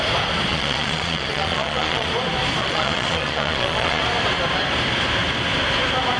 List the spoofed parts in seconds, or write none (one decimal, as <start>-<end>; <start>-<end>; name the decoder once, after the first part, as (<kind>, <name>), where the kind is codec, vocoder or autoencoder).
0.5-2.1 (vocoder, Vocos); 2.6-4.0